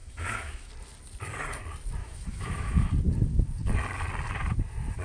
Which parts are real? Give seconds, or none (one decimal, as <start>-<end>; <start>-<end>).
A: 0.7-2.0; 2.9-5.0